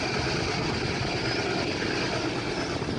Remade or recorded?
recorded